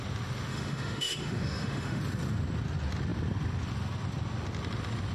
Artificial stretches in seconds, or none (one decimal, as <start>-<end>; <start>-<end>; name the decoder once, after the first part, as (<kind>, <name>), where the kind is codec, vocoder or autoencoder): 0.5-2.0 (autoencoder, DAC-VAE)

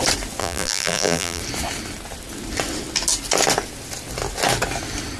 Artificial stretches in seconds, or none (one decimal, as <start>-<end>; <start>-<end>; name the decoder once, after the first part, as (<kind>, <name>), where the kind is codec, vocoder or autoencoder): 0.4-1.4 (vocoder, BigVGAN v2)

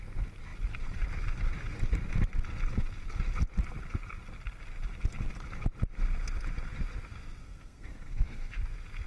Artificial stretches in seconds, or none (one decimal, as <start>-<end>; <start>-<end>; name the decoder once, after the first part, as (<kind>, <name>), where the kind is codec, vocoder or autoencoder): 7.4-8.6 (codec, SNAC)

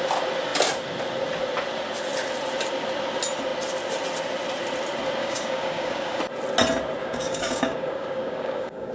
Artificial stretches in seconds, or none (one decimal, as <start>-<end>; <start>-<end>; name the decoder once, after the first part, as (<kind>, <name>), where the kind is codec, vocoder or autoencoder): 5.2-6.2 (codec, DAC); 7.0-8.9

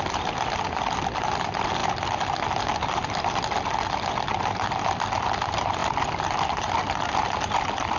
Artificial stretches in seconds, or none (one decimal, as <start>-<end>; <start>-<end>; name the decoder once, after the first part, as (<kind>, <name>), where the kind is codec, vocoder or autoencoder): none

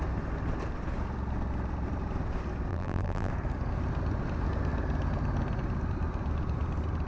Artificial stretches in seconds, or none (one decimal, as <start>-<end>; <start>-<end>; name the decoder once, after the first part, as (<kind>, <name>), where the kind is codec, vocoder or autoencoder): 2.7-3.3 (vocoder, BigVGAN v2)

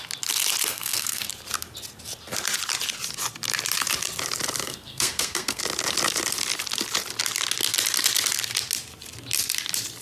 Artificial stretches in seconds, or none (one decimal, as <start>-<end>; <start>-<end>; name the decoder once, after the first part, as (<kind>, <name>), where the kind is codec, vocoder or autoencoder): 0.7-1.3 (codec, SNAC); 4.6-5.6

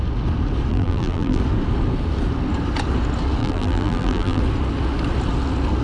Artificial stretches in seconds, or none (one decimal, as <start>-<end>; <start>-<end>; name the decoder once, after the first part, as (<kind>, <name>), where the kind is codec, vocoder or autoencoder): 0.7-1.4 (vocoder, BigVGAN v2); 3.4-4.4